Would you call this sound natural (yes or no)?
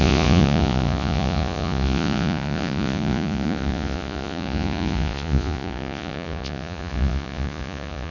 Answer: no